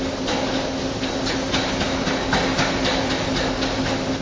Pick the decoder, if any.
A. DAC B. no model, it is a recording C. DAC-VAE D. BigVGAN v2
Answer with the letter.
B